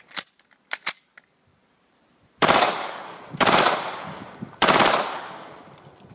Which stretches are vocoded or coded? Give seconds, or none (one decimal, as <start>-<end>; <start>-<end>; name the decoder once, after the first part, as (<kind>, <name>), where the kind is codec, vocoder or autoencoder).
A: 1.5-5.2 (vocoder, BigVGAN v2)